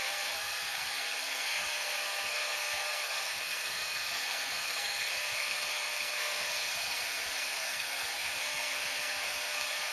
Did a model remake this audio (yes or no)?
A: yes